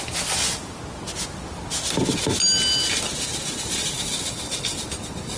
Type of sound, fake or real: real